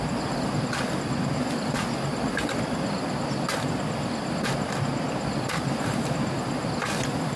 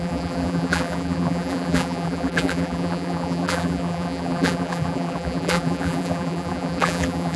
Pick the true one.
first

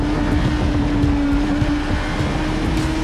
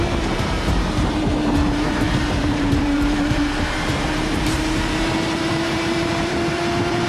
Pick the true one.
first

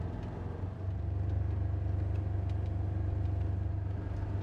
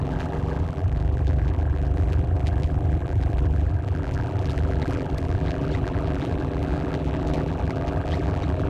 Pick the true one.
first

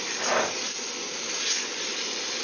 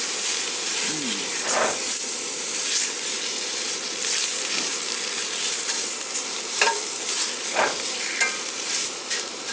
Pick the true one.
first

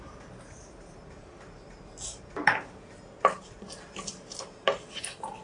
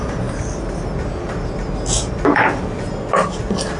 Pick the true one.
second